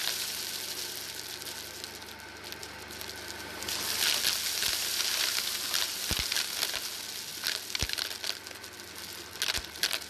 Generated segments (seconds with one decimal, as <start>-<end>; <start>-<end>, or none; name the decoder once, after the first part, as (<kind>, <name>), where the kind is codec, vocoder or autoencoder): none